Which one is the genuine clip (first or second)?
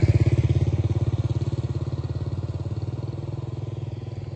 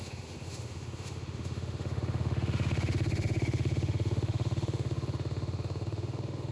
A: first